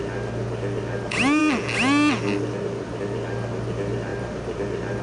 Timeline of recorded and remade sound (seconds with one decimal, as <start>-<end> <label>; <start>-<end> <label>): 0.0-5.0 recorded